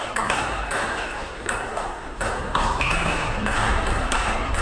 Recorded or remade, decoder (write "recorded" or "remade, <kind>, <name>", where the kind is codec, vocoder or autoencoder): remade, codec, SNAC